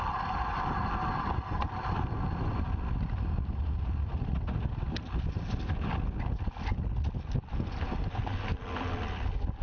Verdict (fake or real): real